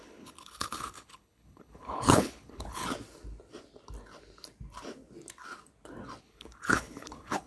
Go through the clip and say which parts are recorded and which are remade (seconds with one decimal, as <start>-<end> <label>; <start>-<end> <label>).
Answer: 0.0-2.8 remade; 2.8-6.2 recorded; 6.2-7.5 remade